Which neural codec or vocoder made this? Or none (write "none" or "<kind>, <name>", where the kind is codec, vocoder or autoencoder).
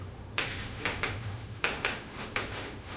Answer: autoencoder, DAC-VAE